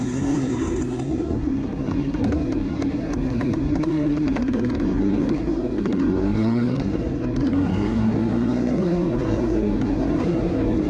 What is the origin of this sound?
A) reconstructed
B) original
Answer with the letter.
A